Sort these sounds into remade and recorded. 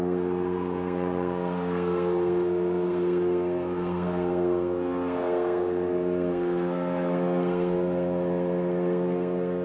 remade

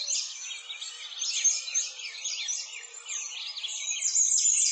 recorded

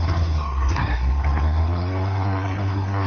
remade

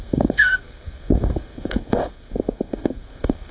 remade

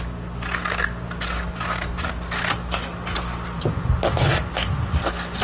recorded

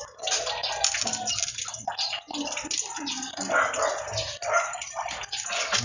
recorded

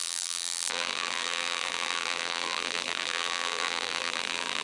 remade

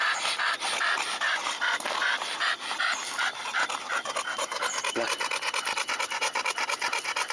recorded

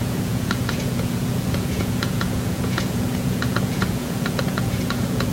remade